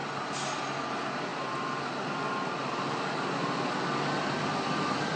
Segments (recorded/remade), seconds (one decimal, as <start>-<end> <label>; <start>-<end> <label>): 0.0-5.2 recorded